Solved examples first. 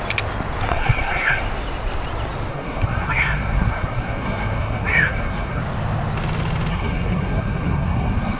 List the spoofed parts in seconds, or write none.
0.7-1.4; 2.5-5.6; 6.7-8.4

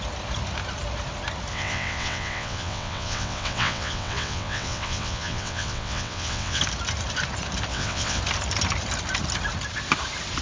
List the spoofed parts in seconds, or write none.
1.5-6.6; 7.7-8.2

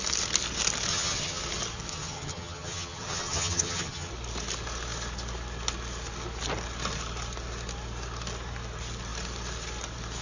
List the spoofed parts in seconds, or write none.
0.9-1.4; 1.9-4.1

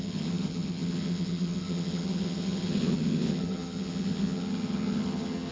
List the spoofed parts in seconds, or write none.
0.0-5.5

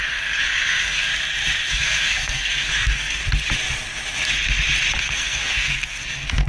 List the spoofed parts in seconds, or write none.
0.0-1.1; 1.7-3.2; 5.0-6.5

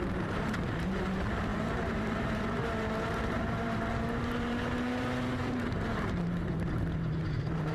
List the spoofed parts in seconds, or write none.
0.0-7.7